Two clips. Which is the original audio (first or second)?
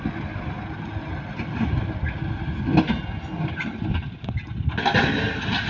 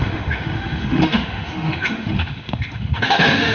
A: first